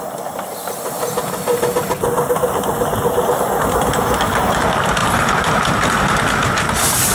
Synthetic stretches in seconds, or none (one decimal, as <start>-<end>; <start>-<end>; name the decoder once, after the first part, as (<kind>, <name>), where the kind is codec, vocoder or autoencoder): 5.0-6.0 (vocoder, BigVGAN v2)